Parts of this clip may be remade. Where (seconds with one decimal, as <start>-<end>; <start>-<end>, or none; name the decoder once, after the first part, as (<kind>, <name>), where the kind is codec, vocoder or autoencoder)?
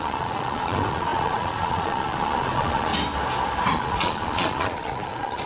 0.0-2.9 (vocoder, Vocos); 3.7-5.5